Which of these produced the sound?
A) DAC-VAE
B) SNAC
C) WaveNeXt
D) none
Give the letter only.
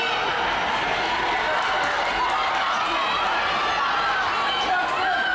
D